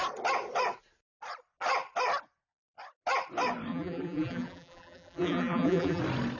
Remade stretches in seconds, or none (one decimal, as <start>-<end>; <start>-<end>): 3.7-6.0